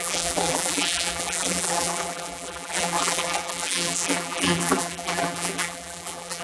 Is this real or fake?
fake